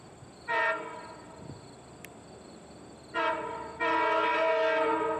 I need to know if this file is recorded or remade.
recorded